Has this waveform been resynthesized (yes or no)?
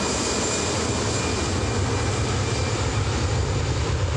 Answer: no